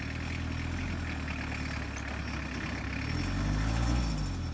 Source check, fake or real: real